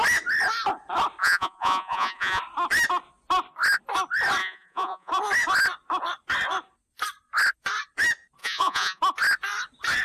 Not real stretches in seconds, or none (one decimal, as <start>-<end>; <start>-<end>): 1.2-2.4; 4.4-5.1; 8.4-9.0